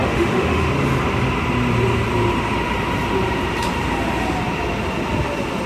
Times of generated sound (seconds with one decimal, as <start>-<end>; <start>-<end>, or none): 0.0-0.7